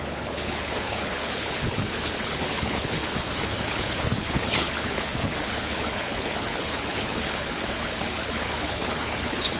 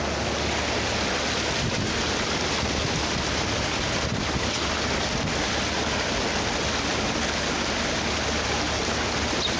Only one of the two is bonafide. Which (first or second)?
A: second